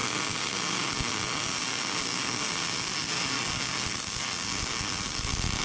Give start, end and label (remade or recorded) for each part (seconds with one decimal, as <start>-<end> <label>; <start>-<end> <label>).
0.0-5.6 recorded